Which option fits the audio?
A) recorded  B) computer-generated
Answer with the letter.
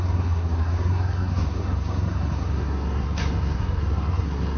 B